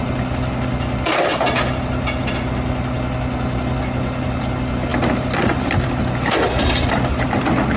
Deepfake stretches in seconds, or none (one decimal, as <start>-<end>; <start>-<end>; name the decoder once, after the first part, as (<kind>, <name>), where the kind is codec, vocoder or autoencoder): none